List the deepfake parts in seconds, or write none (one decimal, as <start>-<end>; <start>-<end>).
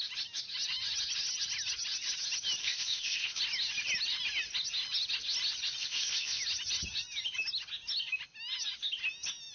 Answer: 2.6-3.4; 5.8-6.4